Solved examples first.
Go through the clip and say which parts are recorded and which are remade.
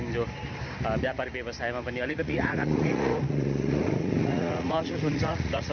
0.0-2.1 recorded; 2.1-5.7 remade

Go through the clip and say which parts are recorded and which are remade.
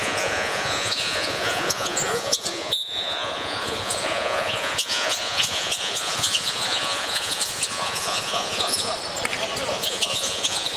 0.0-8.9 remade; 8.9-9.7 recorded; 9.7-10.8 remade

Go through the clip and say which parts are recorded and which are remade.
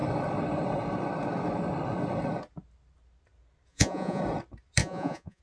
0.0-3.7 recorded; 3.7-4.2 remade; 4.2-4.8 recorded; 4.8-5.4 remade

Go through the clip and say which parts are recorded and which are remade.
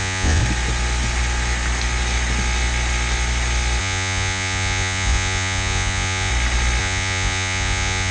0.0-0.4 remade; 0.4-3.8 recorded; 3.8-6.3 remade; 6.3-6.8 recorded; 6.8-8.1 remade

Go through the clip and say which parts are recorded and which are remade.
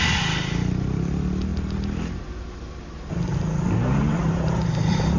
0.0-5.2 recorded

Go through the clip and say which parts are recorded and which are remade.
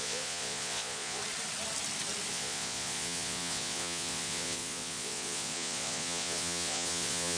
0.0-1.2 remade; 1.2-2.3 recorded; 2.3-7.4 remade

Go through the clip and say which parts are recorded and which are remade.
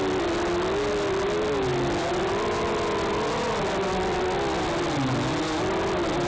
0.0-6.3 recorded